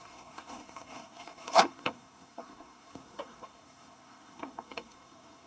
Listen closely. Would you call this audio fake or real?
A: fake